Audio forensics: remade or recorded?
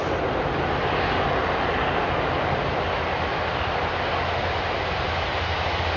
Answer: recorded